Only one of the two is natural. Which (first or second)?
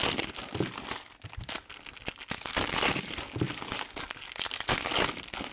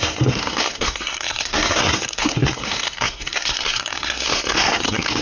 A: first